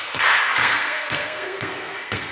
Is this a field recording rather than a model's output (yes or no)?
no